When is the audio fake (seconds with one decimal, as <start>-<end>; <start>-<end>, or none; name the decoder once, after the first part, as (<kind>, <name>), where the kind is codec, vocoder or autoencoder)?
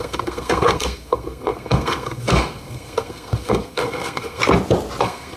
0.0-4.4 (codec, SNAC); 5.0-5.4